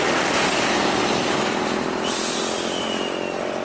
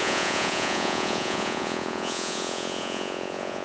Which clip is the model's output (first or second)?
second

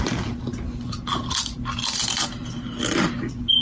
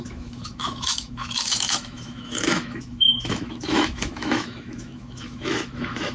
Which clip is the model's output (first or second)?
second